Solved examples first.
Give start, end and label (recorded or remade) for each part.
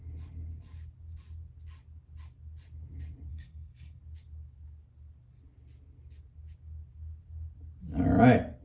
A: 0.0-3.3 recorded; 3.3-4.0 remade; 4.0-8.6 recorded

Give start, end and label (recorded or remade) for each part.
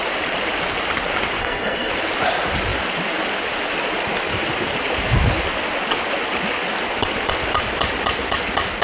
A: 0.0-1.4 recorded; 1.4-1.9 remade; 1.9-8.8 recorded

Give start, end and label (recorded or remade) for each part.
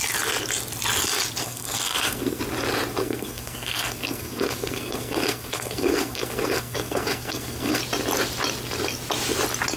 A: 0.0-1.4 recorded; 1.4-2.4 remade; 2.4-3.0 recorded; 3.0-7.8 remade; 7.8-9.8 recorded